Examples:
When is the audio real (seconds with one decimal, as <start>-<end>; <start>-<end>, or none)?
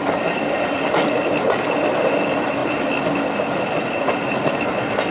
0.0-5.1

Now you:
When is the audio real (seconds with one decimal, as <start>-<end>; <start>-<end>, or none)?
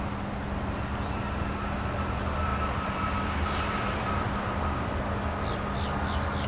0.0-2.5; 4.9-6.5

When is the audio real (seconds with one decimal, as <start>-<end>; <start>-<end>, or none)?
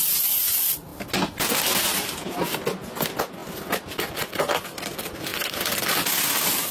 0.0-3.4; 4.3-5.3; 5.8-6.7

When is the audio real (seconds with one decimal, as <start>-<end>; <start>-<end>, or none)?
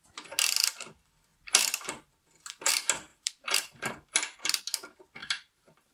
0.0-1.3; 2.7-3.1; 4.6-5.2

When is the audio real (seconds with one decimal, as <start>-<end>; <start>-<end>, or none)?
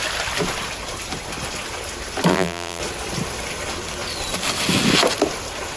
0.0-2.3; 2.8-5.8